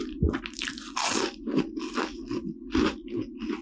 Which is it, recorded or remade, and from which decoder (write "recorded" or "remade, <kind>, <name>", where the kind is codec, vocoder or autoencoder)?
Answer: recorded